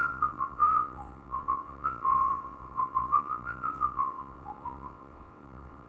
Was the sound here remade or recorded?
remade